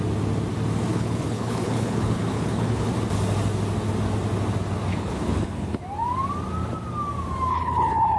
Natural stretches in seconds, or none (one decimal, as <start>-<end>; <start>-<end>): 0.0-0.9; 2.9-4.9; 5.8-7.5